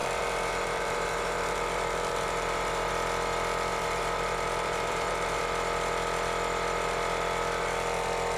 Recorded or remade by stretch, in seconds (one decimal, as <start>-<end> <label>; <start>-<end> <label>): 0.0-2.9 remade; 2.9-3.7 recorded; 3.7-5.4 remade; 5.4-8.4 recorded